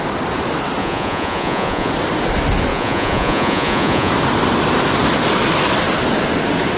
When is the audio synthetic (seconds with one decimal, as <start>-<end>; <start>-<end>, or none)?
0.8-1.9; 2.7-4.1